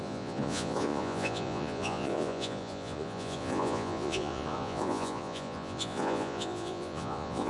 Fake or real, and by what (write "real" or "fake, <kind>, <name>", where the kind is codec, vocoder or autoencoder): fake, vocoder, Vocos